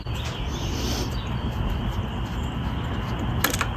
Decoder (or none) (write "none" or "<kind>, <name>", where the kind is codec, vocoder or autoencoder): none